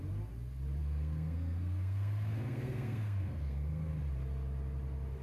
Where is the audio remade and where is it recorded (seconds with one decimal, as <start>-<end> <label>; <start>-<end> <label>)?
0.0-0.8 recorded; 0.8-3.9 remade; 3.9-5.2 recorded

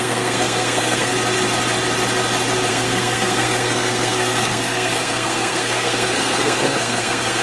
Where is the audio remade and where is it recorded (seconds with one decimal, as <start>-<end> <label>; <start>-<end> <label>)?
0.0-1.1 remade; 1.1-2.7 recorded; 2.7-7.4 remade

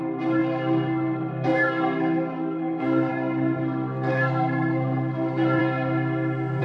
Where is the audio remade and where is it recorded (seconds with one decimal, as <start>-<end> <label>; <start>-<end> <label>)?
0.0-5.6 remade; 5.6-6.6 recorded

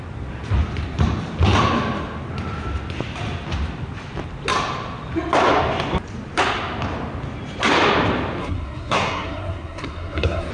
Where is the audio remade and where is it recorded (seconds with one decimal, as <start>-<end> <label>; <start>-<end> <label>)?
0.0-8.4 recorded; 8.4-10.5 remade

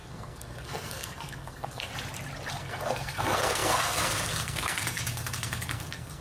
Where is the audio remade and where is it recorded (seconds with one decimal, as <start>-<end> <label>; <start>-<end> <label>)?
0.0-1.9 remade; 1.9-2.5 recorded; 2.5-6.2 remade

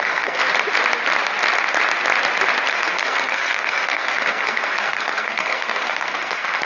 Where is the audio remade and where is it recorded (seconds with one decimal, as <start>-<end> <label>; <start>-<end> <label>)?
0.0-0.4 remade; 0.4-2.7 recorded; 2.7-6.6 remade

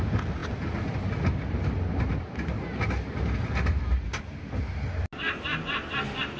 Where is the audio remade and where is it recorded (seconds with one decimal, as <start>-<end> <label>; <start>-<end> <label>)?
0.0-6.4 recorded